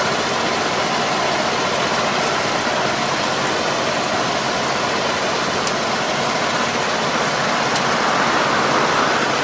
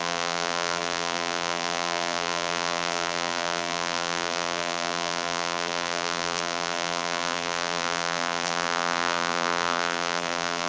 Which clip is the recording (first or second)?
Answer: first